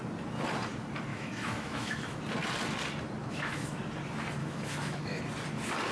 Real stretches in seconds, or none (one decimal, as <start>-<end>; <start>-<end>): 0.0-1.1; 2.2-3.2; 3.8-4.4; 5.2-5.9